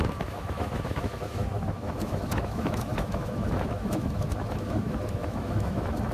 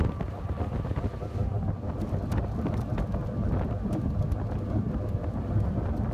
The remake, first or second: first